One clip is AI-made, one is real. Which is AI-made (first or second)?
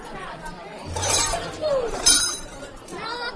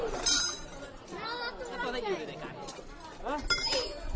first